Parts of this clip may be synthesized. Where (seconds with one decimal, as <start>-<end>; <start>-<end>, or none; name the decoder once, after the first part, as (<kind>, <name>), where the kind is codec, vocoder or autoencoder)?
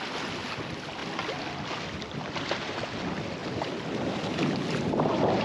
none